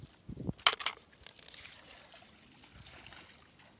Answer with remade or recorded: recorded